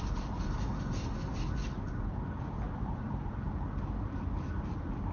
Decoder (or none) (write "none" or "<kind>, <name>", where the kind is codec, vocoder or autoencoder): none